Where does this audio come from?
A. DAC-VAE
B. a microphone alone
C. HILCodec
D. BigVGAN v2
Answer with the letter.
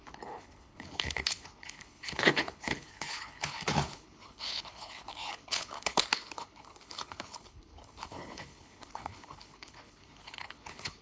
C